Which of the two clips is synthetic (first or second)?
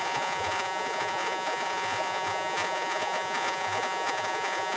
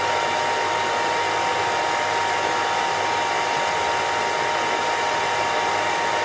first